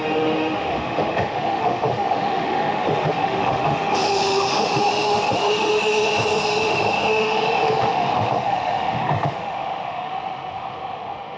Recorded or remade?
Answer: remade